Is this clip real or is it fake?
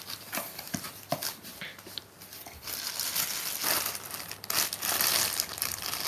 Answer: real